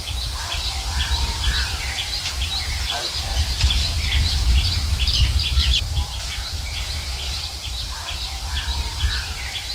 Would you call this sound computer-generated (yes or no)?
yes